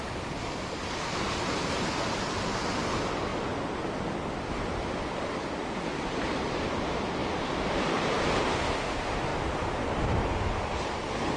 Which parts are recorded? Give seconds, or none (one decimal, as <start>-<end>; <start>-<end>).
0.0-11.4